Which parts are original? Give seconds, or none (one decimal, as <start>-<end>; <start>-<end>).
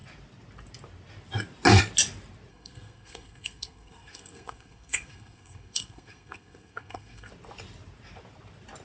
0.0-2.5; 7.3-8.8